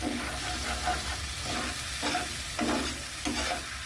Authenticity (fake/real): real